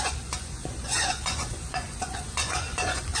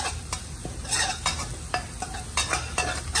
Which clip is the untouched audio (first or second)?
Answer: second